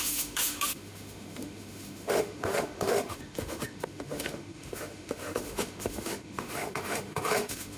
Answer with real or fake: fake